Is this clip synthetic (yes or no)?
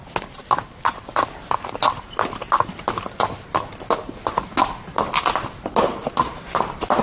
no